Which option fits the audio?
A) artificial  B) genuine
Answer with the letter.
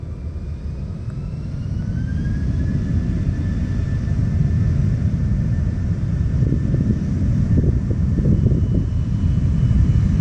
B